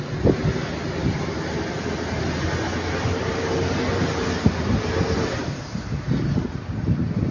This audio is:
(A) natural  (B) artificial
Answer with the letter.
A